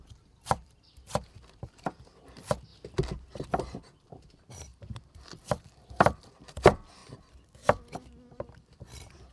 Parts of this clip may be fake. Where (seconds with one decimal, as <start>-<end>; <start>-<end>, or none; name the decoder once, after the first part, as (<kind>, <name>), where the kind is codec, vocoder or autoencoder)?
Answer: 0.0-2.7 (vocoder, BigVGAN v2); 3.6-7.0; 8.3-9.3

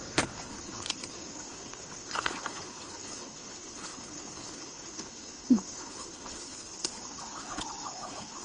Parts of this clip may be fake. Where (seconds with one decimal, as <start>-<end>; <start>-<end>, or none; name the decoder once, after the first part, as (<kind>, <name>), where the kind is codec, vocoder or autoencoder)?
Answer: 0.0-8.4 (codec, HILCodec)

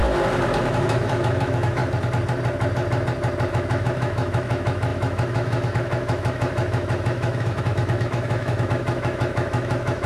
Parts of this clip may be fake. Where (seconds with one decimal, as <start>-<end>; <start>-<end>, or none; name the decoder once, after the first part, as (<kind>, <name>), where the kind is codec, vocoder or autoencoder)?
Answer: 0.6-1.8 (autoencoder, DAC-VAE); 3.5-10.1

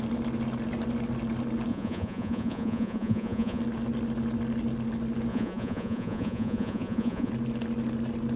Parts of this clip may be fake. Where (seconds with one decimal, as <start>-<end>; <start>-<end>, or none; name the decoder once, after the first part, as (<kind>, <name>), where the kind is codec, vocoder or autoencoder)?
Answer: 1.7-3.6 (vocoder, Vocos); 5.3-7.3